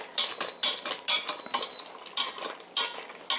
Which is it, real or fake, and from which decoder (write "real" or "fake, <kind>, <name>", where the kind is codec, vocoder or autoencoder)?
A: real